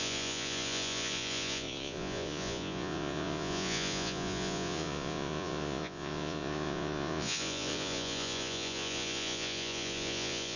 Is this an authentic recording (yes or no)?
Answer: no